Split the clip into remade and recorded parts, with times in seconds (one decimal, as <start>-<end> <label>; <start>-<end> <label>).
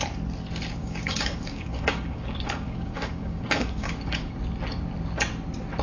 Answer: 0.0-0.8 recorded; 0.8-4.3 remade; 4.3-5.8 recorded